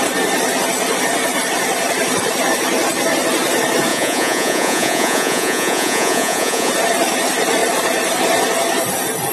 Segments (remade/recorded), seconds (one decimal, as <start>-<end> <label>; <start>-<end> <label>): 0.0-3.9 recorded; 3.9-6.7 remade; 6.7-9.3 recorded